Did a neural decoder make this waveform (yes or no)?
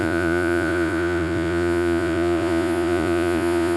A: yes